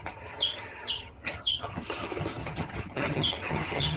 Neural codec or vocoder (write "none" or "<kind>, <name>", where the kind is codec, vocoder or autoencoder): vocoder, HiFi-GAN